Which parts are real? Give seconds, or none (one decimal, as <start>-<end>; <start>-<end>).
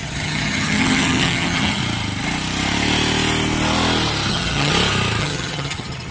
1.8-4.3; 4.7-5.2